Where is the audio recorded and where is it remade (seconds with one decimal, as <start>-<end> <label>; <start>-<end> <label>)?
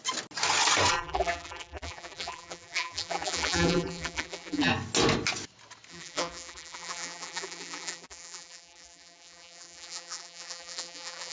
0.0-0.9 recorded; 0.9-4.7 remade; 4.7-5.9 recorded; 5.9-11.3 remade